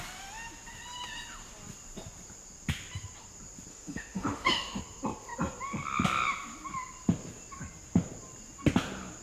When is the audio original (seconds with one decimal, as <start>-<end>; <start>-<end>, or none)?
0.0-3.7; 4.8-9.2